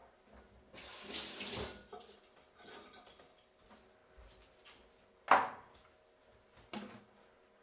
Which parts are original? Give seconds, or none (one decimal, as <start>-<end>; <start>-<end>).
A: 0.0-7.6